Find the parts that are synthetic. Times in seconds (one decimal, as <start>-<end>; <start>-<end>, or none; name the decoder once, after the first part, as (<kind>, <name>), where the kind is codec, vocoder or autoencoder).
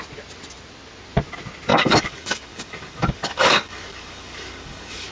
1.7-5.1 (codec, DAC)